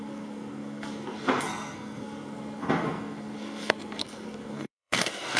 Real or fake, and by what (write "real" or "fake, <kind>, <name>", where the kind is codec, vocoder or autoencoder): fake, codec, SNAC